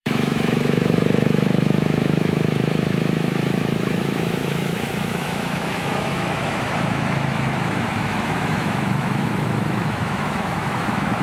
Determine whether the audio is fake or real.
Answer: fake